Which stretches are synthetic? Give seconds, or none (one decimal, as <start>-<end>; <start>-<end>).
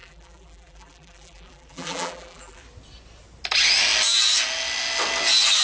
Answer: 0.0-2.6